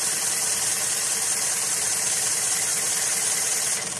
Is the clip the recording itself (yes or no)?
no